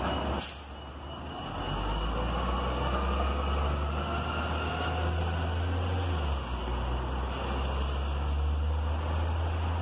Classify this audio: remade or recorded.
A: recorded